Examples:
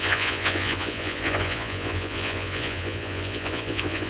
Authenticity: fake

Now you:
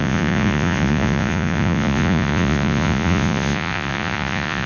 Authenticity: fake